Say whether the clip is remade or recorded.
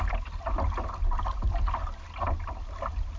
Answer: recorded